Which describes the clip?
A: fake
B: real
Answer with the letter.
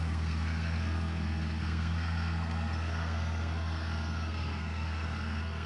A